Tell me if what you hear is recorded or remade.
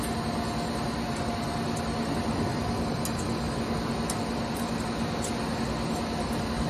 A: recorded